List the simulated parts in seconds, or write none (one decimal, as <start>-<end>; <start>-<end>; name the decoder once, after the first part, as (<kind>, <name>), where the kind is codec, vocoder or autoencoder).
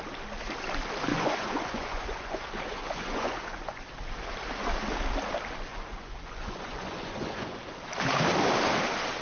1.1-3.8 (vocoder, Vocos); 5.7-7.6